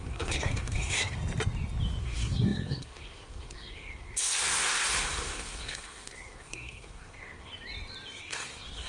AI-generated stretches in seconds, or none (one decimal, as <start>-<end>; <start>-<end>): 0.0-1.2; 2.0-7.5; 8.2-8.9